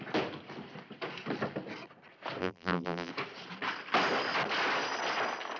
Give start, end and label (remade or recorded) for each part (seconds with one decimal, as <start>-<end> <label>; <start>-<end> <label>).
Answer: 0.0-2.4 recorded; 2.4-3.1 remade; 3.1-5.6 recorded